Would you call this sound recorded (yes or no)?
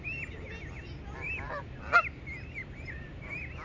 yes